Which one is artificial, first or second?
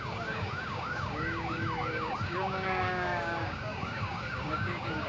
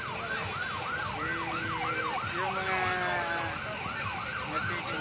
first